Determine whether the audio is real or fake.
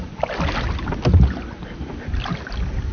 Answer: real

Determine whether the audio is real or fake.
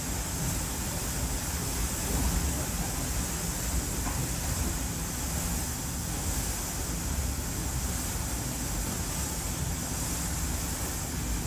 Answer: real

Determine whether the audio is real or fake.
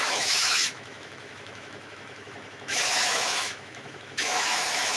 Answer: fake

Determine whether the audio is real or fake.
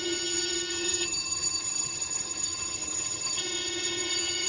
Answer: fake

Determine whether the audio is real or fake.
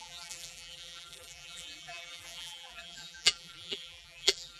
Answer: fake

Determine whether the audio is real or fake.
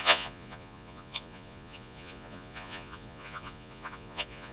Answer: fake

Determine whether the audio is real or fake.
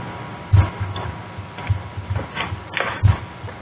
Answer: real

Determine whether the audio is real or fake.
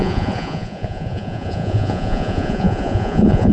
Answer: fake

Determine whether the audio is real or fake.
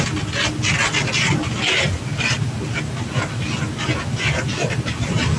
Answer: real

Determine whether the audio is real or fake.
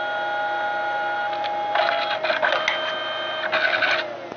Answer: real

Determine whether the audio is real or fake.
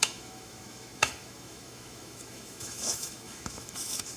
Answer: fake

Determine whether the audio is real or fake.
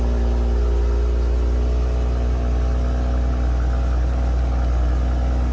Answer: real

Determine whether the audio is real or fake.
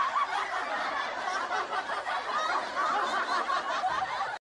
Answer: real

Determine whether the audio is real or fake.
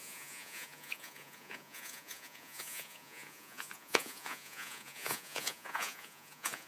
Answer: fake